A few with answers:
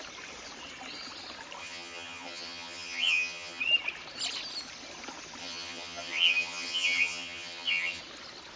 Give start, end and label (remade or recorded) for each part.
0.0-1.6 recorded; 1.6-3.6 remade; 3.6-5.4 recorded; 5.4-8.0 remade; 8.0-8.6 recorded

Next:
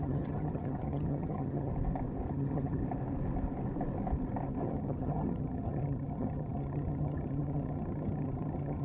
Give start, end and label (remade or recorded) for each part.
0.0-1.7 remade; 1.7-2.3 recorded; 2.3-2.8 remade; 2.8-4.6 recorded; 4.6-8.8 remade